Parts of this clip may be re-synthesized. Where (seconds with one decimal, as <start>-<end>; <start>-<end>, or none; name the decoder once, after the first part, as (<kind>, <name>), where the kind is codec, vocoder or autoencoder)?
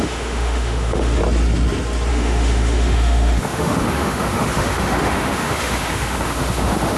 0.0-1.2 (autoencoder, DAC-VAE); 2.1-7.0